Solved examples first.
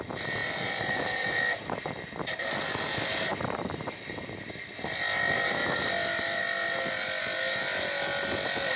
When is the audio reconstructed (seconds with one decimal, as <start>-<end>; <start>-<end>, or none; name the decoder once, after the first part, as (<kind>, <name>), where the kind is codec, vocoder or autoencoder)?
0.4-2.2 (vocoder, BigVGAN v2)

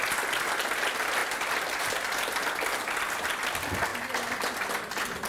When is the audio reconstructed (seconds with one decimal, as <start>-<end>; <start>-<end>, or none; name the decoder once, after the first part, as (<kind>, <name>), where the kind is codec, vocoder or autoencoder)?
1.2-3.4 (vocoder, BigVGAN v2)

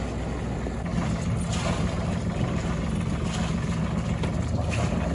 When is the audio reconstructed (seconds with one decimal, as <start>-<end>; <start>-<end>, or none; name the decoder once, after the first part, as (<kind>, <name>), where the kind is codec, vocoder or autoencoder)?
none

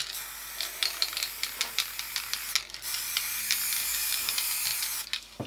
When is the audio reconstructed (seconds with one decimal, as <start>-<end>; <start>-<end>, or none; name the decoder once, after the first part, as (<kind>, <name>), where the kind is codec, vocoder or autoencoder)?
3.8-4.3 (codec, DAC)

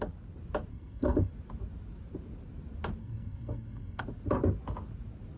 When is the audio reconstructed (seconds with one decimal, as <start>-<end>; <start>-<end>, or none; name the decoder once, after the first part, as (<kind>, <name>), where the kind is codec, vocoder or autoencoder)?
0.7-1.3 (codec, SNAC); 3.0-4.0

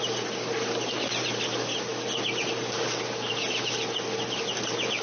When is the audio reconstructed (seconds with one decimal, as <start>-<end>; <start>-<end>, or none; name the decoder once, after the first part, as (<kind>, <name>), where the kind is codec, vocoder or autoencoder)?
none

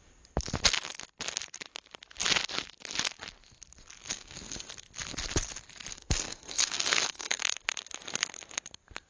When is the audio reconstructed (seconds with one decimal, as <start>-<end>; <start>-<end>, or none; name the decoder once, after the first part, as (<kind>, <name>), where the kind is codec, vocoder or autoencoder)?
4.1-4.7 (codec, SNAC); 5.9-7.4

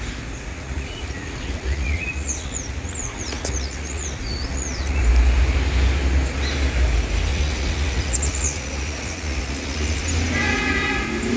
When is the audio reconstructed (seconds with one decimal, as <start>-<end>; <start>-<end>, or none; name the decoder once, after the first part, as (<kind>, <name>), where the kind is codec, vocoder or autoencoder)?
0.5-5.0 (vocoder, Vocos); 7.3-10.0